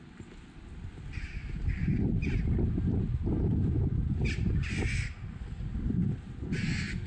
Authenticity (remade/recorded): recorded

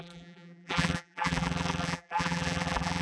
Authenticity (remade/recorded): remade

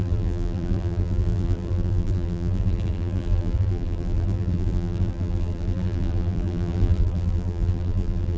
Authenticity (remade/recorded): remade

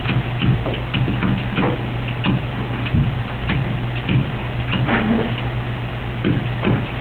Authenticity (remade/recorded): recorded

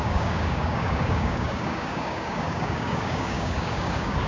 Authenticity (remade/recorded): remade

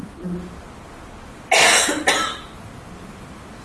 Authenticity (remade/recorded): recorded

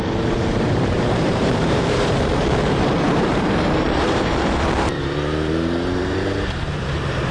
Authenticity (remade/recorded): remade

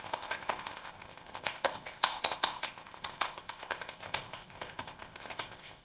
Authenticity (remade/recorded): remade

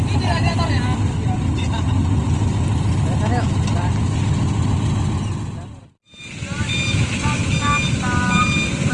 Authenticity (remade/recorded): recorded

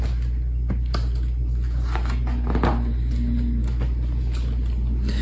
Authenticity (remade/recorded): recorded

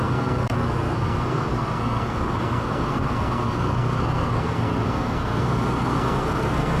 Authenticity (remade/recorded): remade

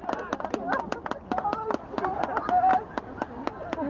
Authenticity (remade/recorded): recorded